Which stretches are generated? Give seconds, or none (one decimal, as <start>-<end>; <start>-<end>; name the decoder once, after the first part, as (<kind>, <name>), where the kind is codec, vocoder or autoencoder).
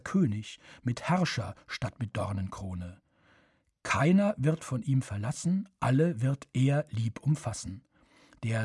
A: none